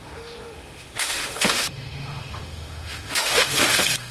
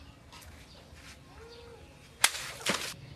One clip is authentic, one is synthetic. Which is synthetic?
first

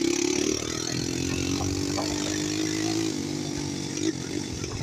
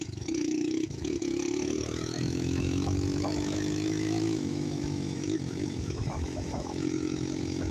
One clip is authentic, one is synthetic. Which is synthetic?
second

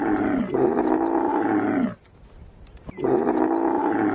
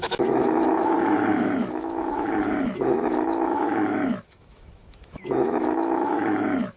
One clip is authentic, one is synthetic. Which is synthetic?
second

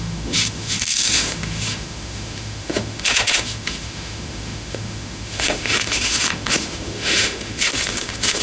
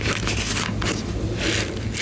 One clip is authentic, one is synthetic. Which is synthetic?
first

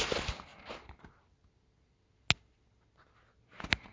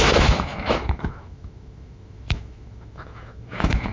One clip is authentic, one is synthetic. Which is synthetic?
second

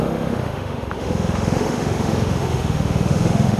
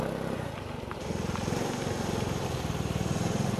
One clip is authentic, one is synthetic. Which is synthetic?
first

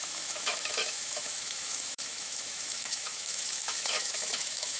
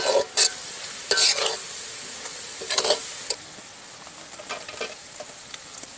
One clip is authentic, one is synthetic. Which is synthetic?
first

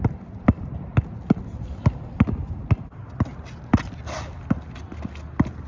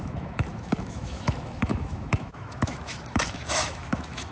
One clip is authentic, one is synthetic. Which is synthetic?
second